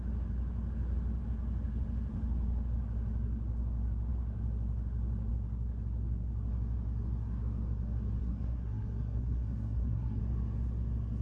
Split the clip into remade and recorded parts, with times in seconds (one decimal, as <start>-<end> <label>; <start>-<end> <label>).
0.0-8.2 recorded; 8.2-10.2 remade; 10.2-11.2 recorded